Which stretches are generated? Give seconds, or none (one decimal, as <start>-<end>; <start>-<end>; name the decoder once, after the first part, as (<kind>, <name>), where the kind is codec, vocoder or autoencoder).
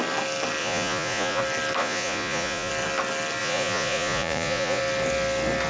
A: 0.6-1.4 (vocoder, Vocos); 1.8-2.7; 3.4-4.8